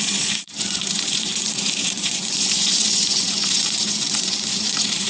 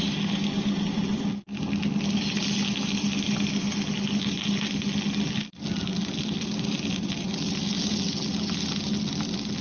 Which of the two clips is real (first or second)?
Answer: second